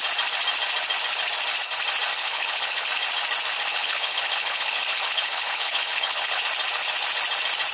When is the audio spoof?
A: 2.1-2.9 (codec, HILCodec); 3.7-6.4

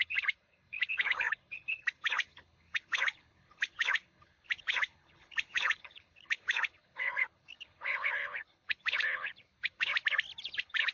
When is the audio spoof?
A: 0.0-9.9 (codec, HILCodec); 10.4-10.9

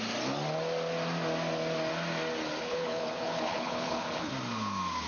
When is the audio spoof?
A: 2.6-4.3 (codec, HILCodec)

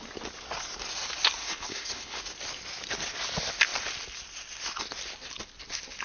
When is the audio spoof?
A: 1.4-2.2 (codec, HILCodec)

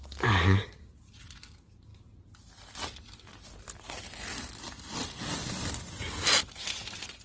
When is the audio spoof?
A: none

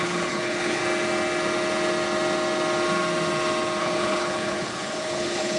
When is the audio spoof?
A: 0.0-0.8 (codec, HILCodec); 3.8-5.6